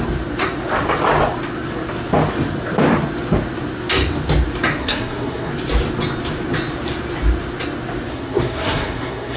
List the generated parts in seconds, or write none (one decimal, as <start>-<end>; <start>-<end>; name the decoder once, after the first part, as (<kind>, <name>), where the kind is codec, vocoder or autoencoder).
4.8-5.5 (codec, SNAC); 8.1-9.4